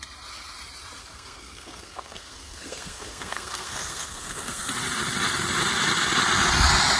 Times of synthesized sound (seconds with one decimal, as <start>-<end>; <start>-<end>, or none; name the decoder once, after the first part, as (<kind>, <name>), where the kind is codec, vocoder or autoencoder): 1.0-4.7 (codec, SNAC)